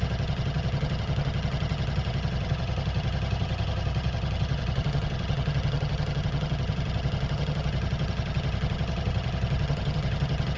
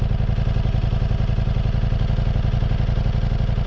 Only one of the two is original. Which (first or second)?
second